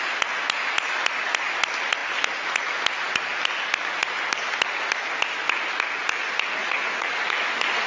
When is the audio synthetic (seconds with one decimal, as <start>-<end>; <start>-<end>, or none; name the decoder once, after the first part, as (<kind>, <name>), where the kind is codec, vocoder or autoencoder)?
6.6-7.2 (vocoder, Vocos)